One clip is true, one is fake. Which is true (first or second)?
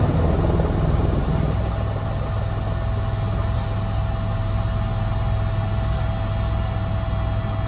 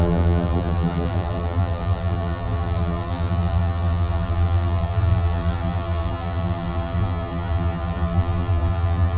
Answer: first